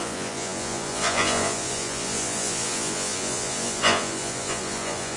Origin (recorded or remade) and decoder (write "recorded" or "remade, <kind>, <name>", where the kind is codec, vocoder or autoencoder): remade, vocoder, Vocos